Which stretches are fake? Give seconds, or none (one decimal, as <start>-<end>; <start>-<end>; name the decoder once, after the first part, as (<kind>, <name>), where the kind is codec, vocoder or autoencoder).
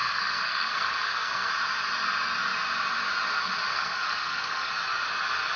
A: 0.0-1.5 (codec, SNAC); 3.7-4.7